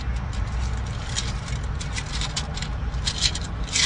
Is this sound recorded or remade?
recorded